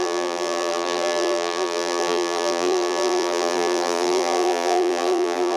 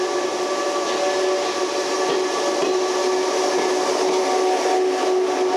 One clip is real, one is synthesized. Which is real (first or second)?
second